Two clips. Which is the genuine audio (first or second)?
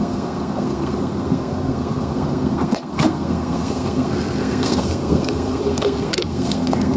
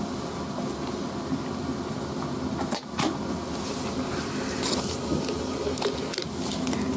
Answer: second